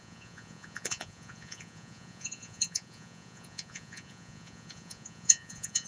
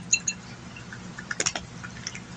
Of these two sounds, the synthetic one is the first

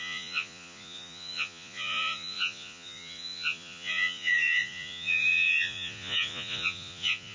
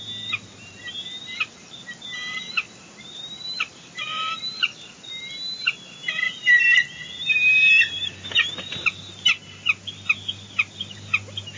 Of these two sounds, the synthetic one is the first